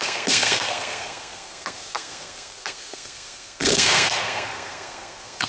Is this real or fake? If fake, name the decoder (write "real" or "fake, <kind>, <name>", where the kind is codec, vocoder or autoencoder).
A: fake, codec, SNAC